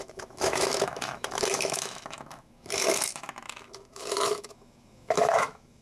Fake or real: fake